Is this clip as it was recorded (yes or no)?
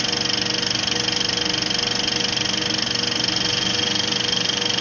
yes